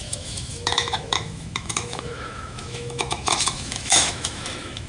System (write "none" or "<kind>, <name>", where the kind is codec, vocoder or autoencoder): autoencoder, DAC-VAE